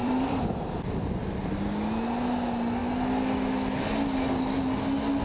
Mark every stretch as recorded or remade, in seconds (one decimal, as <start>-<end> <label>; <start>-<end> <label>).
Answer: 0.0-1.2 remade; 1.2-5.2 recorded